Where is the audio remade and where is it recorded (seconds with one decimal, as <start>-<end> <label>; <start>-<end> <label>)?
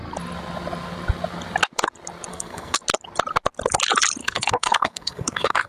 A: 0.0-2.3 recorded; 2.3-2.8 remade; 2.8-4.2 recorded; 4.2-5.7 remade